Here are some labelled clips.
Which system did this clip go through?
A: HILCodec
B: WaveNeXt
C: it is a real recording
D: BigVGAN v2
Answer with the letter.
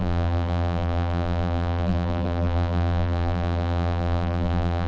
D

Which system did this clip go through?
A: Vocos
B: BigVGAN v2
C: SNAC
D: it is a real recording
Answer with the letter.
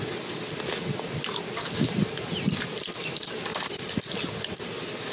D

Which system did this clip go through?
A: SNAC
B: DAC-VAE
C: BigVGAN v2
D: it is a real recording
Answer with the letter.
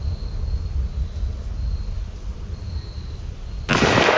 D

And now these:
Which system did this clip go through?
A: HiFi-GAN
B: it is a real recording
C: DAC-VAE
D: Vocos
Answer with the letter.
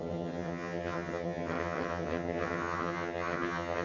A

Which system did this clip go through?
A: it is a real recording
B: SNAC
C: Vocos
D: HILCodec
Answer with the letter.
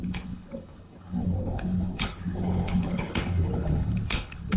D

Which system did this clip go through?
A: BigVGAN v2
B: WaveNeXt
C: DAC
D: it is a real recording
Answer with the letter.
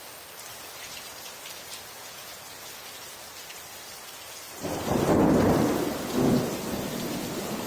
D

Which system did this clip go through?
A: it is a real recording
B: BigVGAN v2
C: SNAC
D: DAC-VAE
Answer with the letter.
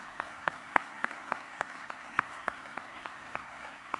C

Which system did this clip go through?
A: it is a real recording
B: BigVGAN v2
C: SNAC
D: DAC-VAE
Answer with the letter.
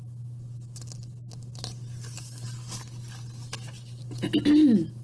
A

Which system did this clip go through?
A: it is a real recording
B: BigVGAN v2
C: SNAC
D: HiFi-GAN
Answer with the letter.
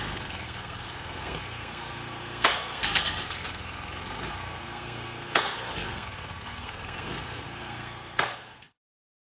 C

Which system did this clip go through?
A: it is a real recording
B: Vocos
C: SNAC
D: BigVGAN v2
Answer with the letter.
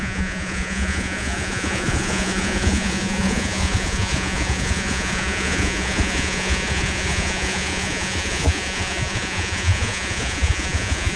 B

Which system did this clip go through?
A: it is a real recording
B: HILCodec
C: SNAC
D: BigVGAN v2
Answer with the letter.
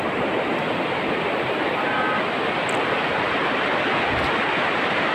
A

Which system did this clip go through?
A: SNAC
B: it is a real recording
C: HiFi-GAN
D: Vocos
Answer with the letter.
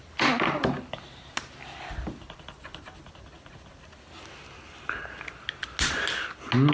B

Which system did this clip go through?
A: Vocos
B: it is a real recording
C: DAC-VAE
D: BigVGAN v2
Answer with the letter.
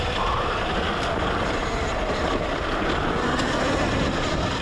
B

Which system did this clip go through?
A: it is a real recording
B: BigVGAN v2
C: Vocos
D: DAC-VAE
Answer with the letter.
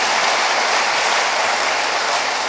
A